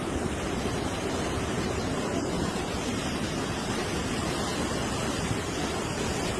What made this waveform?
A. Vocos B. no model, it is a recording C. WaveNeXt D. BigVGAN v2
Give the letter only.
B